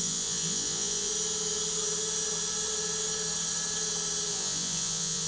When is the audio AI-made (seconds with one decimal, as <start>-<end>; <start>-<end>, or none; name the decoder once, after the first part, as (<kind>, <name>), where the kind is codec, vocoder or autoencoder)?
0.0-1.1 (vocoder, Vocos); 4.3-5.3